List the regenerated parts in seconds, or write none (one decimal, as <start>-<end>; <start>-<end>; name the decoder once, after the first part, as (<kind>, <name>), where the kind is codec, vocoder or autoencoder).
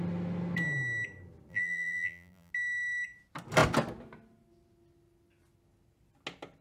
1.5-2.5 (vocoder, BigVGAN v2)